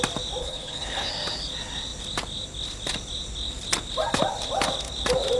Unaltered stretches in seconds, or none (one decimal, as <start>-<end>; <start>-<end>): 0.0-0.4; 1.1-5.4